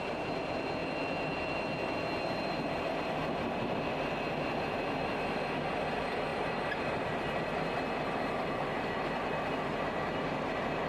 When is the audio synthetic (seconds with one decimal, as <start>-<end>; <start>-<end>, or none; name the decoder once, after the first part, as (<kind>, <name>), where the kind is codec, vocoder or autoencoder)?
2.1-4.2 (vocoder, BigVGAN v2); 6.3-10.9